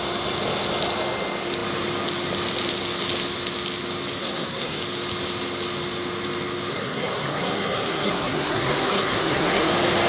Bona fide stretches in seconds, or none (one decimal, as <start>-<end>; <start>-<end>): 0.0-4.2; 4.8-6.7; 9.7-10.1